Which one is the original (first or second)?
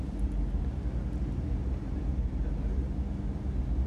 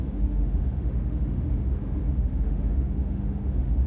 first